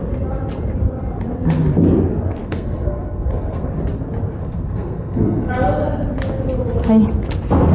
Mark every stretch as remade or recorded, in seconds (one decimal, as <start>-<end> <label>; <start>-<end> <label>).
0.0-2.4 recorded; 2.4-3.7 remade; 3.7-4.4 recorded; 4.4-5.5 remade; 5.5-7.7 recorded